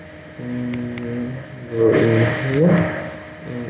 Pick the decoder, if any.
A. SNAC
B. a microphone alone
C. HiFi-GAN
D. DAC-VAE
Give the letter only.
B